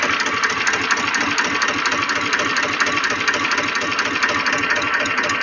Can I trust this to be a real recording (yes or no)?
yes